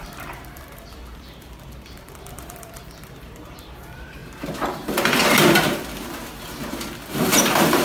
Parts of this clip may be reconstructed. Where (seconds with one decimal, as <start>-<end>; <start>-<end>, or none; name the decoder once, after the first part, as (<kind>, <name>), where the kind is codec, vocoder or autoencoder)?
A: 0.0-4.2 (vocoder, BigVGAN v2); 7.1-7.8